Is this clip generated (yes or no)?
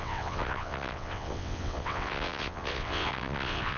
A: yes